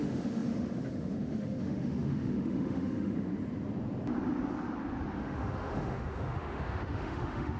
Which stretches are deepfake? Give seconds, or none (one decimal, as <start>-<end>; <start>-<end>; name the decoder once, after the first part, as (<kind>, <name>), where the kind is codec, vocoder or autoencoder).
0.0-3.3 (autoencoder, DAC-VAE); 5.2-7.6